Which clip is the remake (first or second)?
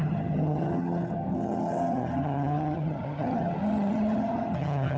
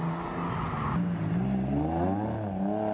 first